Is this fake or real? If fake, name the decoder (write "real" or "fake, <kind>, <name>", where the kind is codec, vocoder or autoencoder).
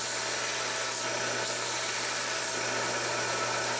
real